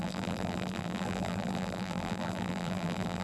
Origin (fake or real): fake